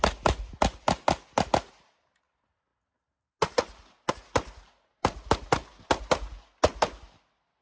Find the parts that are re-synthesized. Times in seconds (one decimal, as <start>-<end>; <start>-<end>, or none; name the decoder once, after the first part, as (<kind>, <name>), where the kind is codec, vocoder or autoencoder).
none